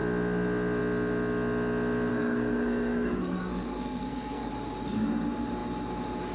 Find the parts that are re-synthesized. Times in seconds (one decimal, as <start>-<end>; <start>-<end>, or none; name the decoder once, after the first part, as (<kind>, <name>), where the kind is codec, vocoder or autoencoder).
2.1-4.5 (codec, SNAC)